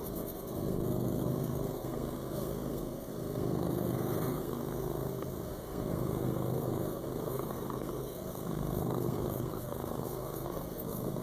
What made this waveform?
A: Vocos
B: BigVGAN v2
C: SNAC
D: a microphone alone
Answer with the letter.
C